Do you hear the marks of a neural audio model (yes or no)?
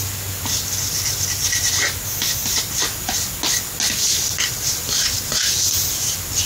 no